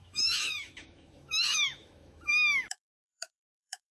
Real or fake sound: fake